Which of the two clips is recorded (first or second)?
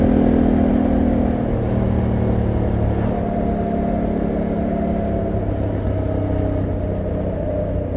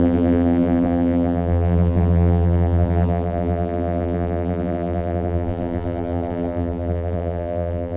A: first